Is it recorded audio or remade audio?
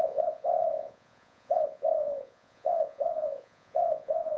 remade